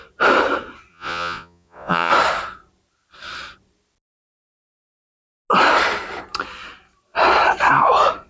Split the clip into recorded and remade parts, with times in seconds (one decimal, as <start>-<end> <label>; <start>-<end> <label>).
0.0-0.9 recorded; 0.9-2.1 remade; 2.1-8.3 recorded